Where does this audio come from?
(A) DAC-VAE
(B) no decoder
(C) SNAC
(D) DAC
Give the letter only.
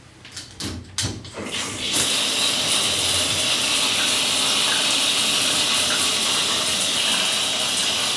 B